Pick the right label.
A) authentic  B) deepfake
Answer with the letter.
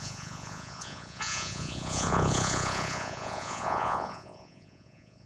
B